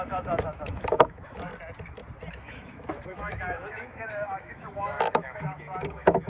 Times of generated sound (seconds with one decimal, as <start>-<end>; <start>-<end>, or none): 0.0-1.5; 2.3-6.3